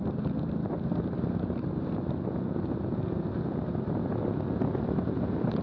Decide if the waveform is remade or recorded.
recorded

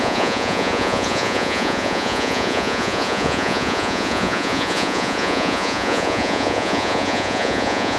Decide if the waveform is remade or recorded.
remade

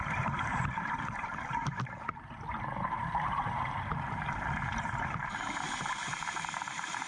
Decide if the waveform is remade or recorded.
remade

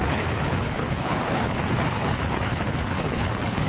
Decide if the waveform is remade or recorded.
remade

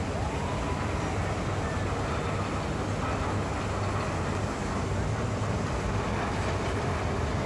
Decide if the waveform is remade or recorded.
recorded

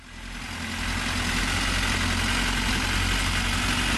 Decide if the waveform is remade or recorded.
recorded